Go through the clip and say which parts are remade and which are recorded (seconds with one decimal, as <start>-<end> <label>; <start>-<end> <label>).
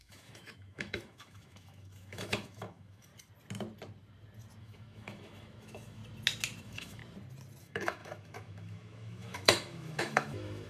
0.0-3.1 remade; 3.1-4.6 recorded; 4.6-6.0 remade; 6.0-6.6 recorded; 6.6-7.0 remade; 7.0-7.6 recorded; 7.6-10.7 remade